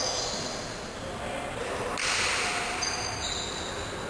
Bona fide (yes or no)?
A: yes